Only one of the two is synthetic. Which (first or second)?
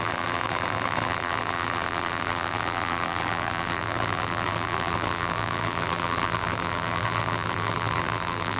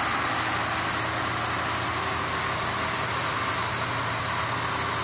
first